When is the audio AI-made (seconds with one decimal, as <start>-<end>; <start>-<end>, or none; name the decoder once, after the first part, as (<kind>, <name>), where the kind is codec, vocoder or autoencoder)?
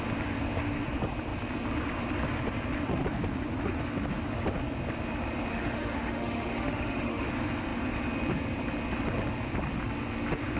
5.5-7.3 (autoencoder, DAC-VAE)